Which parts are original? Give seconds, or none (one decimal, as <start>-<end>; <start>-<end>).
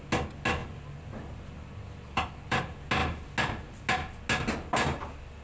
0.0-0.6; 2.6-5.4